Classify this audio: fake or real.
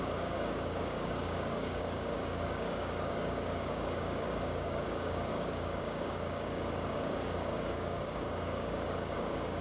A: fake